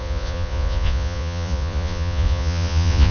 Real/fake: fake